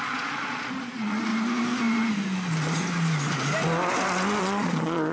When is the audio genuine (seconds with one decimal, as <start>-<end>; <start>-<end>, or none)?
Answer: 1.3-4.4